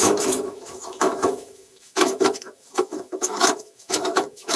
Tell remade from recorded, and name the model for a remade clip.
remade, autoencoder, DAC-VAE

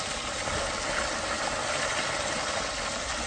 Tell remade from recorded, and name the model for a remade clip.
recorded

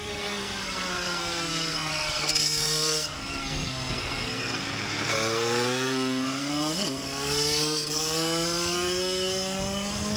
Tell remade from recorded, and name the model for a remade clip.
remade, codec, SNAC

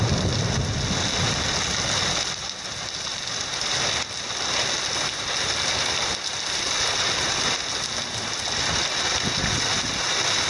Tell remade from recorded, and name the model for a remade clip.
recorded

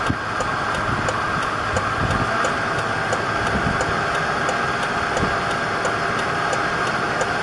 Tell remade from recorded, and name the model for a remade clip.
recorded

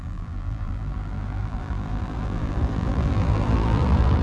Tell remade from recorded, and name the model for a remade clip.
remade, vocoder, BigVGAN v2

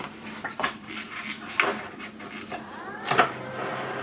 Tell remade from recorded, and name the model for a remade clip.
recorded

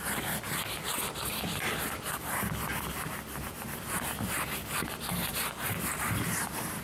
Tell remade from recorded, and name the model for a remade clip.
recorded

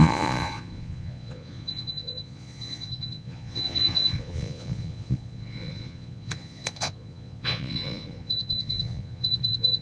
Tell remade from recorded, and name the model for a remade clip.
remade, vocoder, Vocos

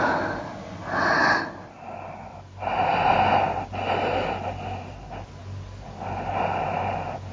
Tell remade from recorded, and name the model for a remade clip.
recorded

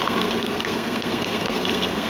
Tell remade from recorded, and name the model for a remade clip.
remade, codec, SNAC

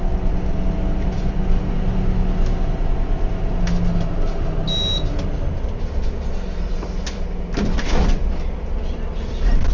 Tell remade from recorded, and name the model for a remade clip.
recorded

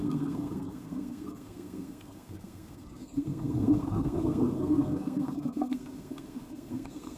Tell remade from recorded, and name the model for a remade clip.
remade, codec, SNAC